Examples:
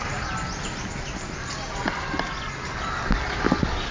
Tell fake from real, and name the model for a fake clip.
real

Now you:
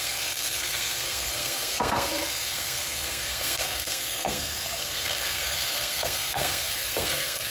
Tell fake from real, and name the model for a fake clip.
fake, codec, SNAC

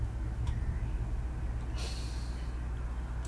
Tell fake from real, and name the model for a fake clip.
real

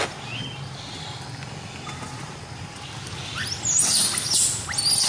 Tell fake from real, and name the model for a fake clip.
real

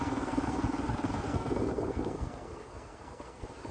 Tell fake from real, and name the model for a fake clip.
fake, codec, SNAC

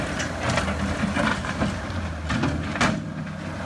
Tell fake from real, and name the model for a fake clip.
real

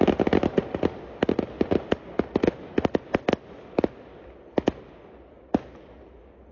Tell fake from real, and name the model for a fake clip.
real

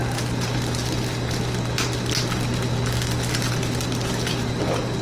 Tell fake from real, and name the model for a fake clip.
real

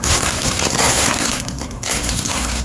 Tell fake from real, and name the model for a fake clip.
fake, codec, SNAC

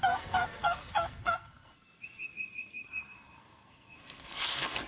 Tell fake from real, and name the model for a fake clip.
fake, codec, SNAC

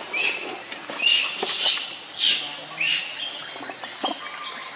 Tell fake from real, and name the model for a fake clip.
real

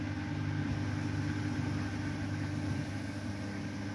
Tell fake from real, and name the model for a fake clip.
real